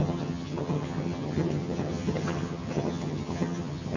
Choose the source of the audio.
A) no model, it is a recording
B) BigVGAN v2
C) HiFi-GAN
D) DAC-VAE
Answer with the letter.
C